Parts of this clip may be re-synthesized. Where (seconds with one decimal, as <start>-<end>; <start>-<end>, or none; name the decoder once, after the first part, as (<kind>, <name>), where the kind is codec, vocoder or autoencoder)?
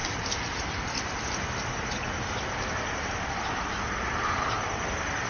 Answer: none